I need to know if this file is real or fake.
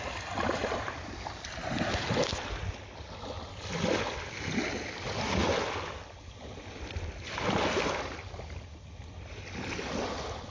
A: real